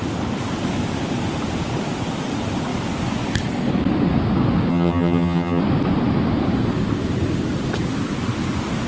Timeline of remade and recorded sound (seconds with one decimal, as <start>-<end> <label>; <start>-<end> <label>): 0.0-4.7 recorded; 4.7-5.6 remade; 5.6-8.9 recorded

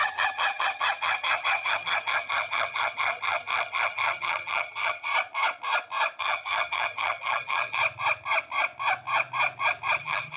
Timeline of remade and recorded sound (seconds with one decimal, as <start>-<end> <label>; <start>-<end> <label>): 0.0-5.1 remade; 5.1-6.2 recorded; 6.2-7.8 remade; 7.8-10.0 recorded; 10.0-10.4 remade

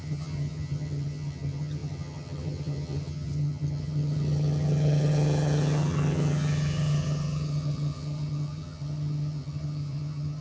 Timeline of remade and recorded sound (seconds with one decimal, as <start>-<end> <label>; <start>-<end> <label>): 0.0-10.4 remade

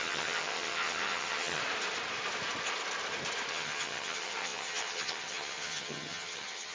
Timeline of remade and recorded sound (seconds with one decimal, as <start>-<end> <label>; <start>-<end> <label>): 0.0-1.6 remade; 1.6-3.5 recorded; 3.5-6.7 remade